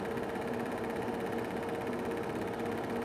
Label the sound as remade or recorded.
recorded